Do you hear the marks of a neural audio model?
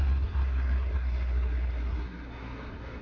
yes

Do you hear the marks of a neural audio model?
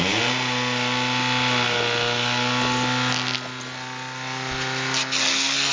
no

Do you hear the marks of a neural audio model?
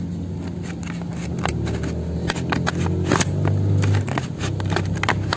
no